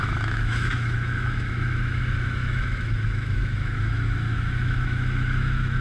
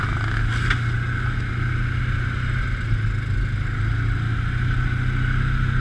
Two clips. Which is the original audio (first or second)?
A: second